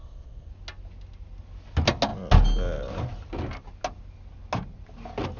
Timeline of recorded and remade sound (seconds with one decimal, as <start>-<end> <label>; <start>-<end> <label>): 0.0-0.5 remade; 0.5-5.4 recorded